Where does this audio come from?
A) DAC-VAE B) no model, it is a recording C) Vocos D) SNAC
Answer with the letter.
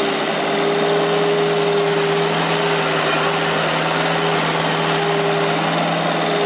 B